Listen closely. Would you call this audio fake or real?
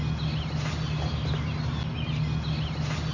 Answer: real